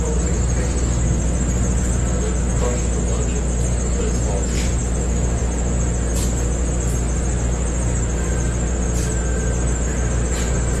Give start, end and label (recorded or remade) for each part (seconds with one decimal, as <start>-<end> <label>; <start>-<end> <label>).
0.0-10.8 recorded